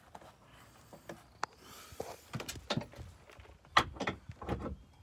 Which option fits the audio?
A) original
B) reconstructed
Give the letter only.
A